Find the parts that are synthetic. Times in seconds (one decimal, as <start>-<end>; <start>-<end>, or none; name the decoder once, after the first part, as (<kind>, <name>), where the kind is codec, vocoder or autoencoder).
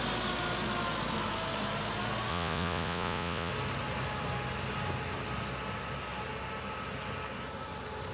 2.3-3.5 (vocoder, Vocos)